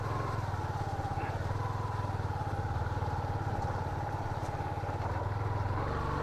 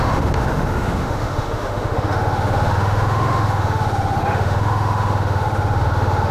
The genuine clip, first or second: first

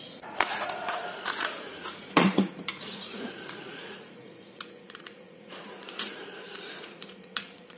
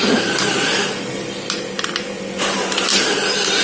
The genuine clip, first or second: second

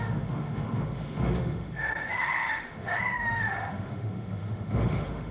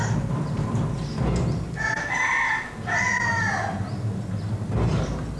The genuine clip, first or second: second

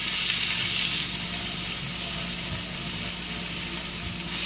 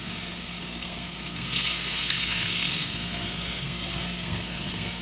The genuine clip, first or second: first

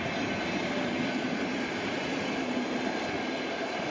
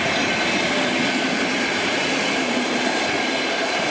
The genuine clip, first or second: first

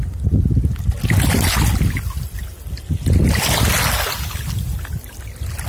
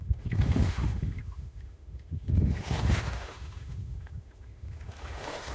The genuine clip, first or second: first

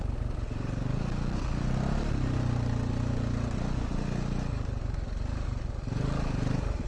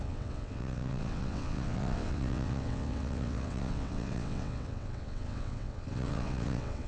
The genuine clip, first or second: first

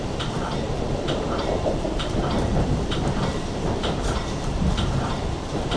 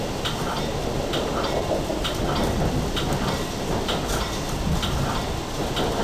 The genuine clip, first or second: second